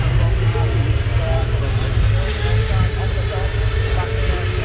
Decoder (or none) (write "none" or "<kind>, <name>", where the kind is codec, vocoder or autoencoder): none